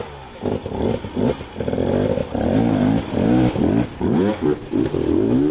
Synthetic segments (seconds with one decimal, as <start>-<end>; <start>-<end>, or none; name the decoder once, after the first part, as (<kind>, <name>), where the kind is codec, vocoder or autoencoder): 2.2-4.0 (vocoder, BigVGAN v2)